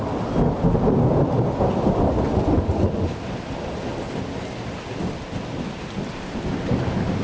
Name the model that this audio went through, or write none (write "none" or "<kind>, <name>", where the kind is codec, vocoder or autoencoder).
none